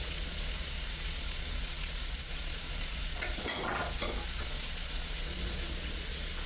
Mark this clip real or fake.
fake